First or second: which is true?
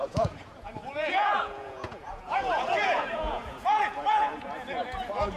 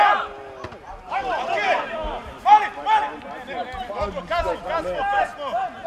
second